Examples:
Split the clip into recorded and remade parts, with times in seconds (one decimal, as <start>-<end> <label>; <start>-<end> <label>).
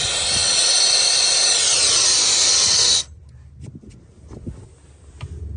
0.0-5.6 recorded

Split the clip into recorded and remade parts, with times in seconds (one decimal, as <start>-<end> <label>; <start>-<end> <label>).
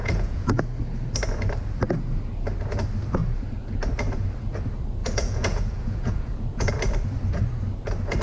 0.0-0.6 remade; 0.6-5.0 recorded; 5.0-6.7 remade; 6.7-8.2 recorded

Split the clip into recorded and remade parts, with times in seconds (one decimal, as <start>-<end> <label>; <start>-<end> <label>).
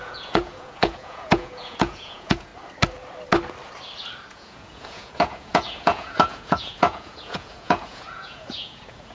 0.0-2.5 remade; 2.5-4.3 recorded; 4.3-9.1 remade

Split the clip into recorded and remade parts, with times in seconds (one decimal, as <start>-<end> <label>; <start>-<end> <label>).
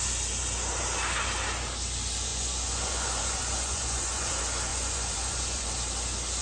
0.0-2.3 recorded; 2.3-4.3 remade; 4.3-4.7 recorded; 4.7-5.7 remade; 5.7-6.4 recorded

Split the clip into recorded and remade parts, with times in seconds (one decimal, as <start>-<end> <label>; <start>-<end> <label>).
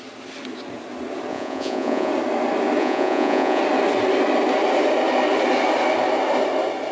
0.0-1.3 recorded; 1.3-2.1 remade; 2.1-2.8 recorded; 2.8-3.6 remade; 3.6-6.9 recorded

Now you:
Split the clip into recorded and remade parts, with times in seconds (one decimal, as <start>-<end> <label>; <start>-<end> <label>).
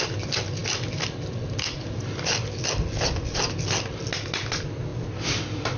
0.0-5.8 recorded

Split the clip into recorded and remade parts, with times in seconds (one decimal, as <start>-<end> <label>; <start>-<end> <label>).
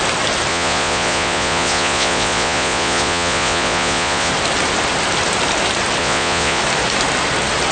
0.0-0.5 recorded; 0.5-4.3 remade; 4.3-6.0 recorded; 6.0-6.6 remade; 6.6-7.7 recorded